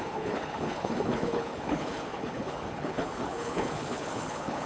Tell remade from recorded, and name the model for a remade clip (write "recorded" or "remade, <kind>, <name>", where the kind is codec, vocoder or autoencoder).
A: remade, codec, HILCodec